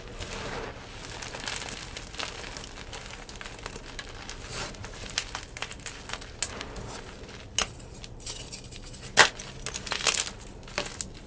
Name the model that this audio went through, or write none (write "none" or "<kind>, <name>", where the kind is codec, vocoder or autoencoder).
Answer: none